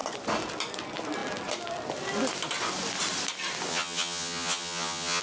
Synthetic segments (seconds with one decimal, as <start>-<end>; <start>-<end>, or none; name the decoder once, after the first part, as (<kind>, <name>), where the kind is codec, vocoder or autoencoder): 3.7-5.2 (vocoder, HiFi-GAN)

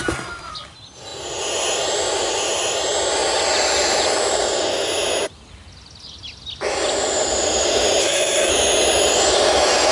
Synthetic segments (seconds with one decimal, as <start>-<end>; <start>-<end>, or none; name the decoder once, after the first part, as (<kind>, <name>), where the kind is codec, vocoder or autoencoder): 8.0-8.5 (codec, SNAC)

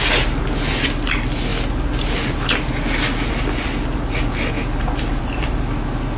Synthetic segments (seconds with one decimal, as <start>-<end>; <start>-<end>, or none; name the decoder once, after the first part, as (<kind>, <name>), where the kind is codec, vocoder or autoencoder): none

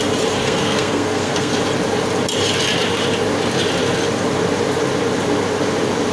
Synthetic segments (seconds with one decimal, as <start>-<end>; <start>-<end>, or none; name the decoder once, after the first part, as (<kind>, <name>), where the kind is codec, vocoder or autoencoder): 0.4-1.5 (codec, SNAC)

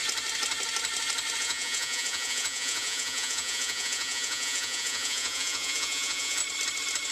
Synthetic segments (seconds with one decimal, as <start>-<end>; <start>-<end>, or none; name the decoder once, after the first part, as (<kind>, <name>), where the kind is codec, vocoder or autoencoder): 1.4-6.4 (vocoder, Vocos)

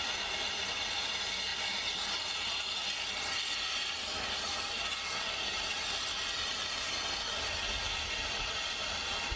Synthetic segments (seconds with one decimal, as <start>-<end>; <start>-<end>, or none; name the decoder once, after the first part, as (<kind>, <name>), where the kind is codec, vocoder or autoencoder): none

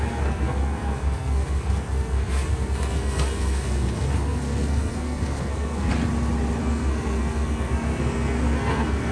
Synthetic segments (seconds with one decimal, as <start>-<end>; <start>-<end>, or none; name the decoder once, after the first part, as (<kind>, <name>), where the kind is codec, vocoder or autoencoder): 0.0-5.9 (codec, SNAC); 6.6-9.1

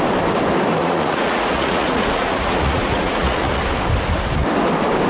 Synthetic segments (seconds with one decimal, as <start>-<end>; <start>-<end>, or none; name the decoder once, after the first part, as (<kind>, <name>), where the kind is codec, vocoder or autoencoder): 0.8-3.6 (vocoder, Vocos)